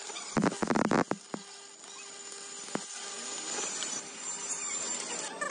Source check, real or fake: real